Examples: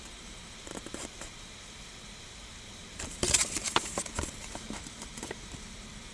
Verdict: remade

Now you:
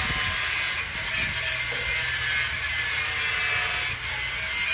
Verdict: recorded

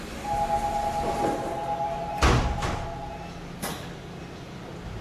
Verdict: recorded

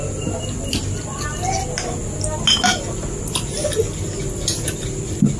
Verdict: recorded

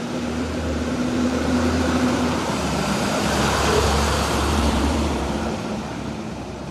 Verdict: remade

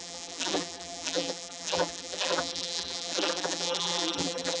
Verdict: remade